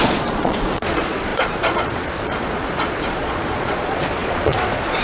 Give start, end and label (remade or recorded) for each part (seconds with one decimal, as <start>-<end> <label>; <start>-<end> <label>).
0.0-5.0 remade